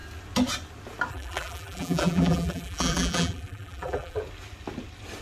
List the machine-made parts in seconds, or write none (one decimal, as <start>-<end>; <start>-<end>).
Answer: 1.1-4.2